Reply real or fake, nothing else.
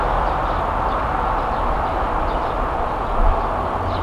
real